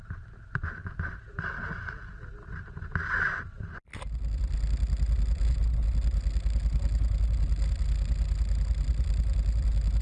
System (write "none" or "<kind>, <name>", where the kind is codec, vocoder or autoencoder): none